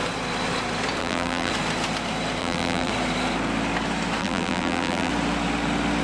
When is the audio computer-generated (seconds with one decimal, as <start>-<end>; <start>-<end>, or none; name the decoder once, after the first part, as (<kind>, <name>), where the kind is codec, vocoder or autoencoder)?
1.0-1.5 (vocoder, BigVGAN v2); 2.4-2.9; 4.2-5.1